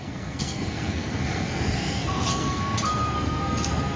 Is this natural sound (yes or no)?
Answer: no